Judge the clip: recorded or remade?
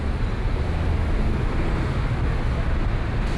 recorded